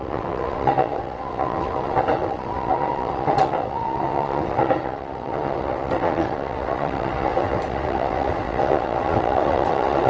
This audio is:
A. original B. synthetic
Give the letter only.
B